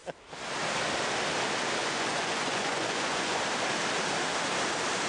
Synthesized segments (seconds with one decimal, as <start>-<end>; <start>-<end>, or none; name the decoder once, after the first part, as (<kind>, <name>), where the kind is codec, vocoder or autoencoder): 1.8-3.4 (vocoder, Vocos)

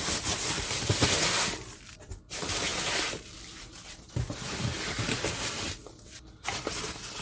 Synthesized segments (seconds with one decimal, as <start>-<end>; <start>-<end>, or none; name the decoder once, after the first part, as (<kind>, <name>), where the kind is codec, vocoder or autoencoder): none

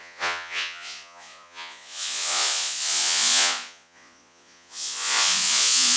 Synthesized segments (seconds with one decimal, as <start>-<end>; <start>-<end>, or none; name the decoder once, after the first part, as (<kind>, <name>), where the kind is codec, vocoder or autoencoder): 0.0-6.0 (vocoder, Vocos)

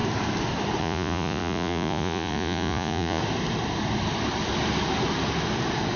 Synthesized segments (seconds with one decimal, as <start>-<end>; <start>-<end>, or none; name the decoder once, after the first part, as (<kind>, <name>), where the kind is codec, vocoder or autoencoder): 0.8-3.2 (vocoder, Vocos)

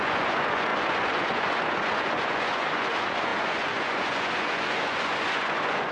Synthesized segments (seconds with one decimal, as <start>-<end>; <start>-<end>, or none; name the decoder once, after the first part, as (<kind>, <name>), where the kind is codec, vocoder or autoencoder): 0.0-5.9 (vocoder, Vocos)